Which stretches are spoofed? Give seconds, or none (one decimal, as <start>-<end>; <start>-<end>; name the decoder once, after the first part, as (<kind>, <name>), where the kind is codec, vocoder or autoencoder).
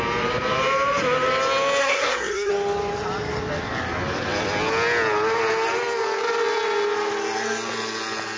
1.8-2.5 (codec, SNAC)